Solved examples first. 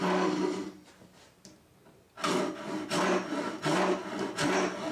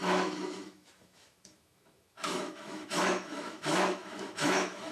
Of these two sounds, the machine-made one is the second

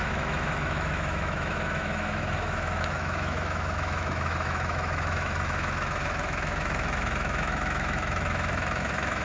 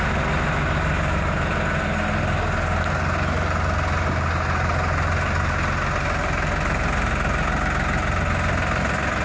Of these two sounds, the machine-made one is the first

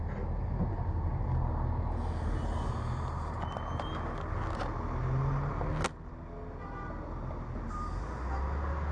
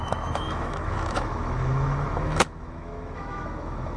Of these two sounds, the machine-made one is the second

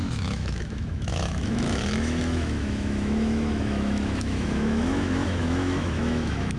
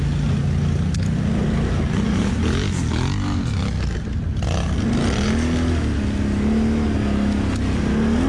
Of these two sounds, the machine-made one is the first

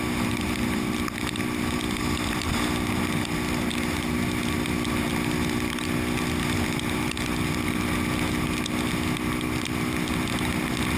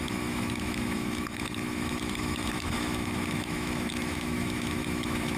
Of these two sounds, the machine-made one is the second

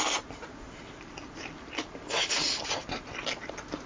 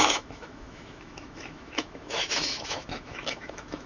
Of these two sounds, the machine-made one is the second